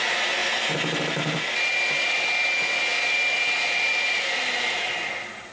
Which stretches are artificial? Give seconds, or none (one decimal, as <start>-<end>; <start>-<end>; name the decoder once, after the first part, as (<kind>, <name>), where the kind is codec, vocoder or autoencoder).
none